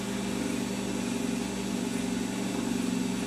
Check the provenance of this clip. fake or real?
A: real